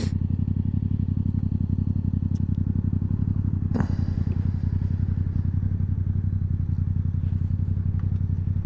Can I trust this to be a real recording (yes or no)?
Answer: yes